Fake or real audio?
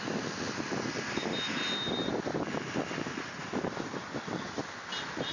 real